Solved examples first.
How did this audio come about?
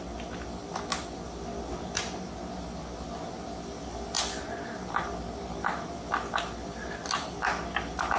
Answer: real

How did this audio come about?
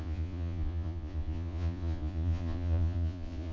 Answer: fake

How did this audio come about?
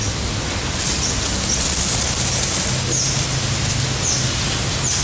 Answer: real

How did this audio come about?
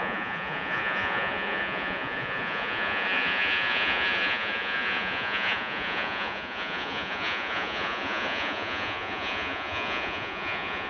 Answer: fake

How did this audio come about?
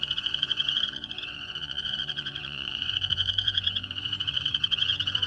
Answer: fake